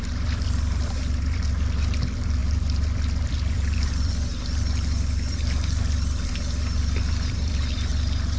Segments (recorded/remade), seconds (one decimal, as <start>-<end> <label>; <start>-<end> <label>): 0.0-4.3 remade; 4.3-7.1 recorded; 7.1-7.9 remade; 7.9-8.4 recorded